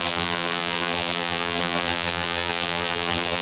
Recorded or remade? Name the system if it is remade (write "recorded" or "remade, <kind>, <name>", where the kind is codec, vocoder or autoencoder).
remade, vocoder, BigVGAN v2